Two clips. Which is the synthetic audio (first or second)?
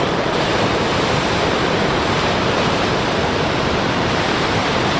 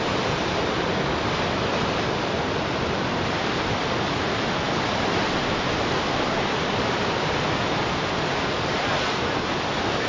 first